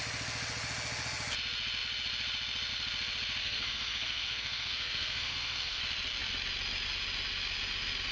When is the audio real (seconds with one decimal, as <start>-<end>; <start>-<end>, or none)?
0.0-3.4; 5.8-8.1